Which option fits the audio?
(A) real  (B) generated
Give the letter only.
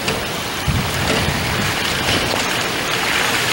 A